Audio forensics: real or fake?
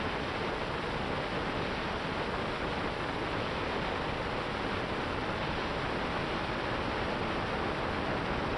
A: real